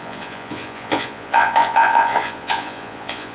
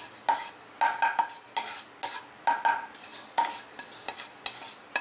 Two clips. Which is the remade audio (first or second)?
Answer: first